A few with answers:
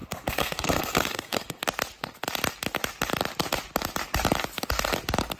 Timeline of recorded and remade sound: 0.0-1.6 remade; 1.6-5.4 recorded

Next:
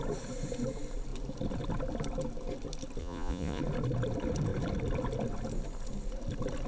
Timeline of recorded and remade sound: 0.0-3.0 recorded; 3.0-3.6 remade; 3.6-6.7 recorded

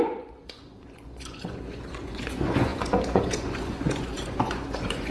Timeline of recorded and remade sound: 0.0-5.1 remade

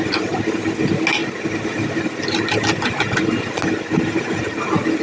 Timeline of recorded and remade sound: 0.0-5.0 recorded

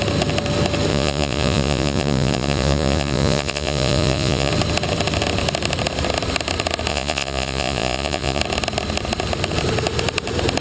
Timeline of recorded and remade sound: 0.0-0.9 recorded; 0.9-4.5 remade; 4.5-6.9 recorded; 6.9-8.4 remade; 8.4-10.6 recorded